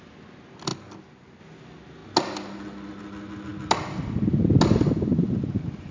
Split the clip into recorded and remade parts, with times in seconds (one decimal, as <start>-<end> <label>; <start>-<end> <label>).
0.0-5.9 recorded